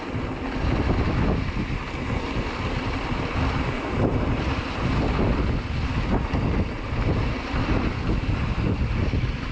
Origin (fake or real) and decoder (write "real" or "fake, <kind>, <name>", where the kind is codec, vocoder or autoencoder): real